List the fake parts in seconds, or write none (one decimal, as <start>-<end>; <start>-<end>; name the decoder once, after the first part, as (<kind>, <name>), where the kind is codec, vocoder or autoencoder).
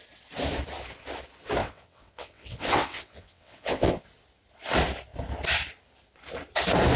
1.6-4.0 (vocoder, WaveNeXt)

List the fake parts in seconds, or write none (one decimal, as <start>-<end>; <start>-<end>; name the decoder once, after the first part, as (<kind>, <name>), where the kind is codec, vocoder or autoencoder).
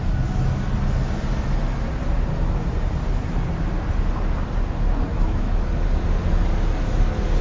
5.1-5.7 (autoencoder, DAC-VAE)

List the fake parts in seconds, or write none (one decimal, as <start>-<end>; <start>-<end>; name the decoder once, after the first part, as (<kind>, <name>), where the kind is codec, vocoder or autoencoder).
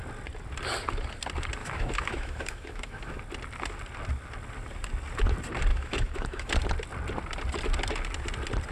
1.6-3.2 (autoencoder, DAC-VAE); 5.7-6.5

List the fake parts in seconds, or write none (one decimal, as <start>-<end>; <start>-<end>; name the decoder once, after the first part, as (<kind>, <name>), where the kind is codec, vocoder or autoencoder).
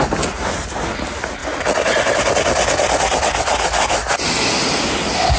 none